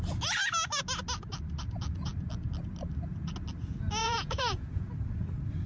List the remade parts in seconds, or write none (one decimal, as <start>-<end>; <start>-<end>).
4.0-4.9